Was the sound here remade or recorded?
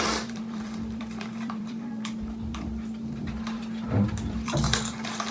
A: remade